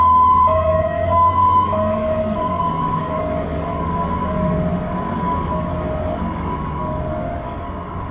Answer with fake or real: fake